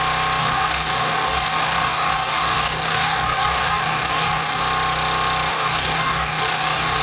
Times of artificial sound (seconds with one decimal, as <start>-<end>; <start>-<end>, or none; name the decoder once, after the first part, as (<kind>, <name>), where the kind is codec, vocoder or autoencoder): 0.4-4.6 (codec, DAC); 5.5-7.0